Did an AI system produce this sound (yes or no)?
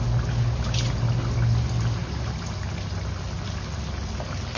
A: no